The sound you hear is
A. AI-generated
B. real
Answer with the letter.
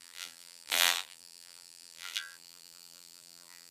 A